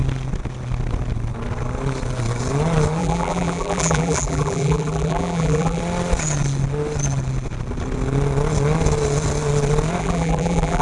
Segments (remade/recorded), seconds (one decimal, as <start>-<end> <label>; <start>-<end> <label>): 0.0-3.0 recorded; 3.0-5.8 remade; 5.8-10.0 recorded; 10.0-10.8 remade